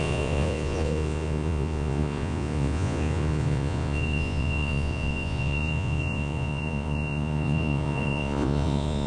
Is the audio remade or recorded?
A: remade